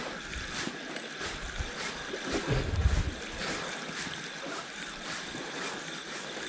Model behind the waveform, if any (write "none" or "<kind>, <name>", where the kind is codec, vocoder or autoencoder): none